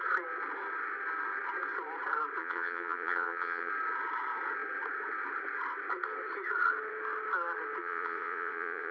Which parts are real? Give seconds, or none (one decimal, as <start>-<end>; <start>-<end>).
0.0-2.4; 3.7-7.8